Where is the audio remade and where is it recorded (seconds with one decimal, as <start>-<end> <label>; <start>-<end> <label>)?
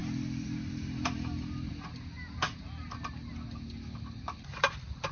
0.0-5.1 recorded